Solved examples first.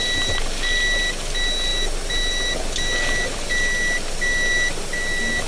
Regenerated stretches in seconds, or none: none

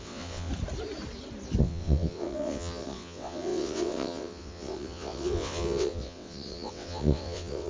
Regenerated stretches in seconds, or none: 0.0-0.5 (vocoder, WaveNeXt); 1.6-7.7